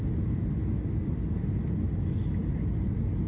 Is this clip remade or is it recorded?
recorded